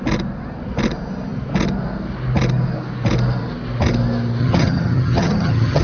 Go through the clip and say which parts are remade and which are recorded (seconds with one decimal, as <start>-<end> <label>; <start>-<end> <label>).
0.0-4.4 recorded; 4.4-5.8 remade

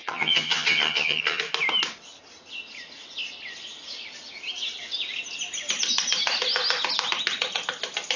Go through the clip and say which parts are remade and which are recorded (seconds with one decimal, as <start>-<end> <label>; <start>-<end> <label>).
0.0-1.4 remade; 1.4-8.2 recorded

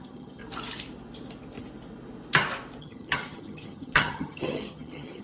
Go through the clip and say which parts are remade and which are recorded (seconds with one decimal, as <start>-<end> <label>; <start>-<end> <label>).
0.0-0.4 remade; 0.4-2.8 recorded; 2.8-5.2 remade

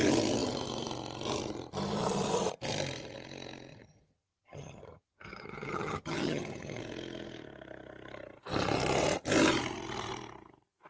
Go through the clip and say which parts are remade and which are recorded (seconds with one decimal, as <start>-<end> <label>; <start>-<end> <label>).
0.0-3.7 recorded; 3.7-6.8 remade; 6.8-10.9 recorded

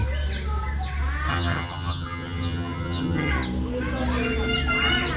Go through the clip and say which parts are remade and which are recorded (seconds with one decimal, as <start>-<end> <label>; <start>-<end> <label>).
0.0-1.3 recorded; 1.3-3.3 remade; 3.3-5.2 recorded

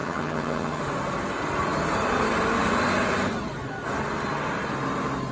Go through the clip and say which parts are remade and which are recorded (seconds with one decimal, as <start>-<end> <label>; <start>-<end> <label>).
0.0-0.8 remade; 0.8-5.3 recorded

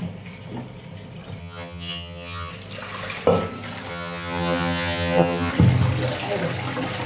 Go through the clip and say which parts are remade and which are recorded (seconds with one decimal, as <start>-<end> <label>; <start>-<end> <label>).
0.0-1.4 recorded; 1.4-2.5 remade; 2.5-3.9 recorded; 3.9-5.5 remade; 5.5-7.1 recorded

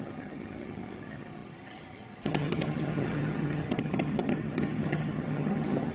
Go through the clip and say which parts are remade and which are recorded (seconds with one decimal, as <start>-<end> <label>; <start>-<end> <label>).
0.0-5.9 remade